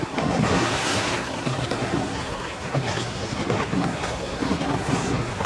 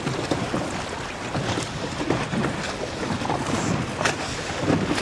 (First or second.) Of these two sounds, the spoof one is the first